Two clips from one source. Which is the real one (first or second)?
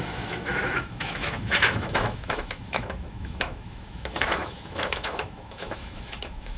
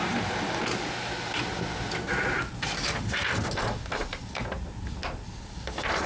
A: second